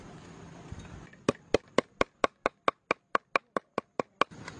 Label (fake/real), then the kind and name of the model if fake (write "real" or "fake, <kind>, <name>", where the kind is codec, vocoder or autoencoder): real